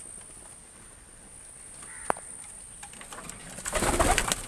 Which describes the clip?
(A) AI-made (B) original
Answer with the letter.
B